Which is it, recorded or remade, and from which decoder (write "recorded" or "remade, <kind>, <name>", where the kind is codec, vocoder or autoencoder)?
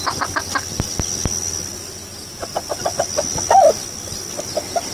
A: recorded